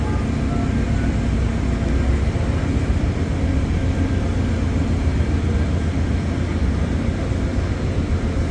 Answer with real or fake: real